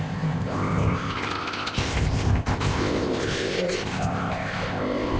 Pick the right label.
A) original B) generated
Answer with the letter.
B